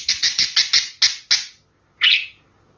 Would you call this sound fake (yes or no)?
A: no